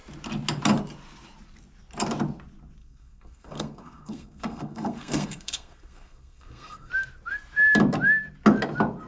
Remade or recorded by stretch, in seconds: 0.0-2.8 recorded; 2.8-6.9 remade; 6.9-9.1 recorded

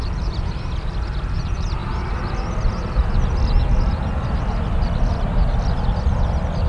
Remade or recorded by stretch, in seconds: 0.0-6.7 recorded

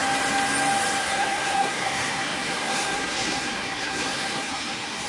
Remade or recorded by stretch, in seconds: 0.0-1.0 recorded; 1.0-5.1 remade